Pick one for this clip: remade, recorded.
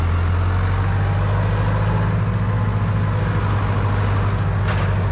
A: recorded